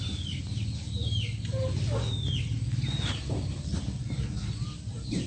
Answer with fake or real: real